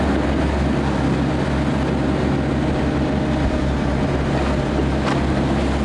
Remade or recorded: recorded